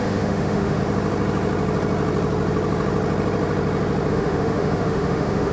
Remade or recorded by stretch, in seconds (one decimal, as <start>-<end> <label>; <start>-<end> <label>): 0.0-0.8 remade; 0.8-4.1 recorded; 4.1-5.5 remade